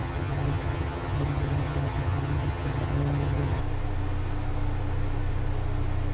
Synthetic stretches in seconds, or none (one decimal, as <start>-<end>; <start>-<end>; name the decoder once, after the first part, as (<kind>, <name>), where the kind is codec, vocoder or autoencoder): 0.0-3.6 (vocoder, HiFi-GAN)